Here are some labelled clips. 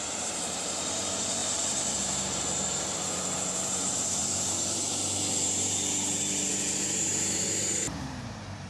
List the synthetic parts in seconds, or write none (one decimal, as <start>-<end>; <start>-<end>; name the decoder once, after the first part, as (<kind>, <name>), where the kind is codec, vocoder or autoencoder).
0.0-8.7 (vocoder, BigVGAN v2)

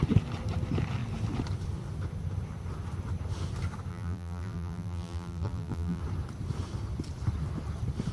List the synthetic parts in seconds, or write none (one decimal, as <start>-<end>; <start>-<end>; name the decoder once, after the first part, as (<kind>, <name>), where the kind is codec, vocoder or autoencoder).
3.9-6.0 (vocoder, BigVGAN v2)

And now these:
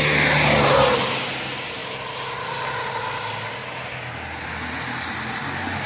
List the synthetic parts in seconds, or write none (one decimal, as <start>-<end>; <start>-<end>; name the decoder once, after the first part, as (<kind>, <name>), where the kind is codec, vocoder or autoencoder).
1.8-2.9 (vocoder, BigVGAN v2)

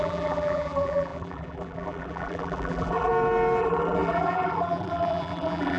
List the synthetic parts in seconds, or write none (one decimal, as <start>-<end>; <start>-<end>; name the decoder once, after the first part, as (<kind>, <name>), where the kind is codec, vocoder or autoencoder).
0.0-3.1 (vocoder, BigVGAN v2); 3.6-5.8

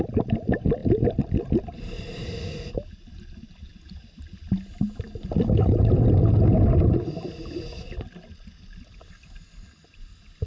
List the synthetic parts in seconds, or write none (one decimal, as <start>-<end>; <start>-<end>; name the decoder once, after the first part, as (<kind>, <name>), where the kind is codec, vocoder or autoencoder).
none

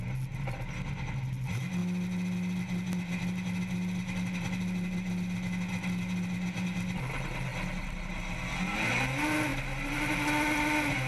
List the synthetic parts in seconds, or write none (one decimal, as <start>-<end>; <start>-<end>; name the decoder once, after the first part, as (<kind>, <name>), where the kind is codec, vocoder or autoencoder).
none

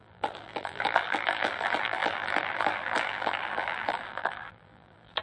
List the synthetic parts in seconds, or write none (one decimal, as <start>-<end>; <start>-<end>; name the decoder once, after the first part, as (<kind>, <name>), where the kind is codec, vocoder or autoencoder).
0.0-5.2 (vocoder, BigVGAN v2)

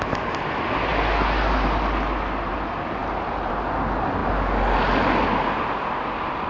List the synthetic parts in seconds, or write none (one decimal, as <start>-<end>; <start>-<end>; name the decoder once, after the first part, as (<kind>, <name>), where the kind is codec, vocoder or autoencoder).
0.9-2.5 (vocoder, BigVGAN v2); 3.0-3.6